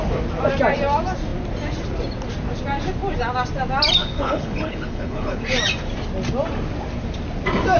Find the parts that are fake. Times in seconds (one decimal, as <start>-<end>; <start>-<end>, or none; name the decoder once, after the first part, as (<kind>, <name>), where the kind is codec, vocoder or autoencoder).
4.0-5.4 (codec, HILCodec)